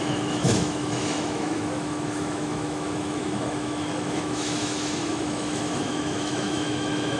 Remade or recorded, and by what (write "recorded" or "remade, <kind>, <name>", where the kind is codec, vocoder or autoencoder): remade, autoencoder, DAC-VAE